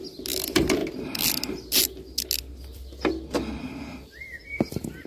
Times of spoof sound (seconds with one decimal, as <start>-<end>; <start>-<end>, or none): 0.0-0.8; 3.6-5.1